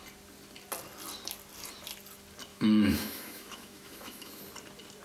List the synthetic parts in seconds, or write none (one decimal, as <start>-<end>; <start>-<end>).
2.5-4.4

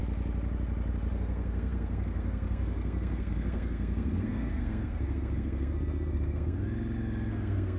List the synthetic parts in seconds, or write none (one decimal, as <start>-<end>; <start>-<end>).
1.1-6.6; 7.3-7.8

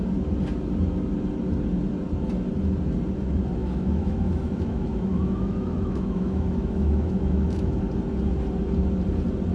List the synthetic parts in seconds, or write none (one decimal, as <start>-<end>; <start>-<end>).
3.6-7.8

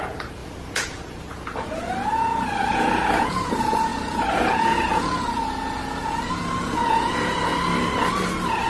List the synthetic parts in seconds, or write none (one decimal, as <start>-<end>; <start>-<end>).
0.0-7.5

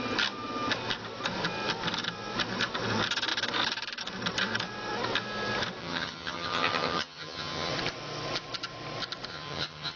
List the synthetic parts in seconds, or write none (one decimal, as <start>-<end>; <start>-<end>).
5.8-7.7; 9.3-10.0

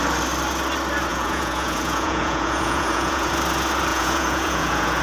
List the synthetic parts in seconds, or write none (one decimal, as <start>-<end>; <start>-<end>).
1.1-3.3; 3.9-5.0

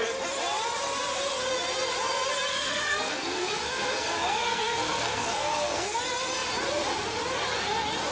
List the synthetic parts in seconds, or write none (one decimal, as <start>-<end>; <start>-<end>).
2.5-6.0

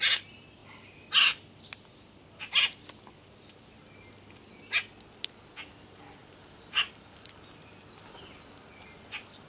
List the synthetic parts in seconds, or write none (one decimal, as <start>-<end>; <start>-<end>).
6.2-7.9